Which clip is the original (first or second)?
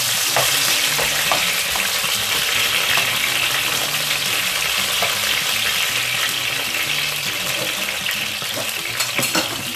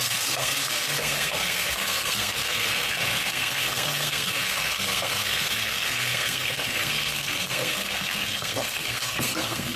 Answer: first